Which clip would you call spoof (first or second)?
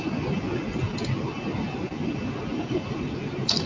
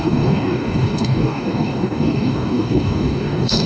second